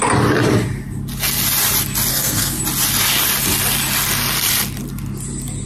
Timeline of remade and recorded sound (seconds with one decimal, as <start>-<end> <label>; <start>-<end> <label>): 0.0-2.1 recorded; 2.1-2.6 remade; 2.6-5.7 recorded